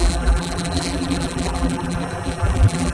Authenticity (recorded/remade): remade